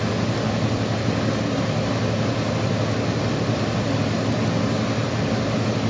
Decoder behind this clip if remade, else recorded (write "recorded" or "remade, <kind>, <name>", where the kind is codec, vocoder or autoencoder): recorded